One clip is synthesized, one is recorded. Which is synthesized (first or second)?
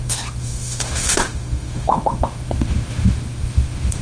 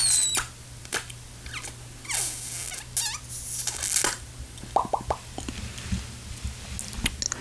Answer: first